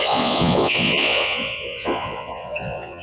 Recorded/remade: remade